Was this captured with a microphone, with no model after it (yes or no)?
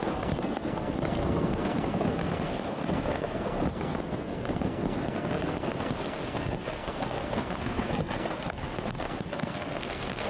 no